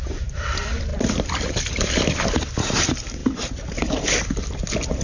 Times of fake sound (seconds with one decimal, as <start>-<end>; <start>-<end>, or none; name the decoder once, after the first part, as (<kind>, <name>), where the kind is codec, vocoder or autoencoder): 0.0-5.0 (vocoder, BigVGAN v2)